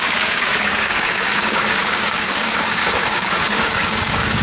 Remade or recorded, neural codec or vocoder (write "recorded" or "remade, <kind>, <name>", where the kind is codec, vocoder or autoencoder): remade, codec, DAC